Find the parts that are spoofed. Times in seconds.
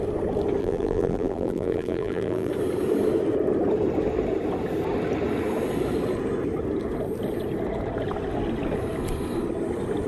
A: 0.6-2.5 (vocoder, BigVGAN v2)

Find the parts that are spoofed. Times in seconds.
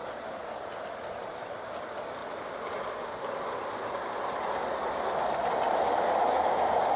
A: 0.0-1.8 (vocoder, BigVGAN v2)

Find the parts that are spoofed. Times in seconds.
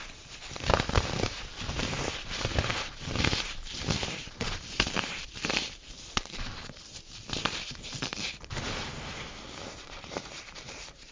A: 0.0-8.1 (vocoder, BigVGAN v2); 9.8-11.1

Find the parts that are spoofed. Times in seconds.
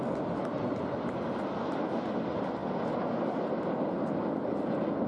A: 0.7-1.2 (vocoder, BigVGAN v2)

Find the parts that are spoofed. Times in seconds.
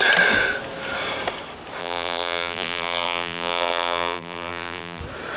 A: 1.8-5.0 (vocoder, BigVGAN v2)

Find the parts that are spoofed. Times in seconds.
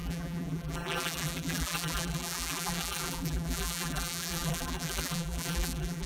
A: 0.0-6.1 (vocoder, BigVGAN v2)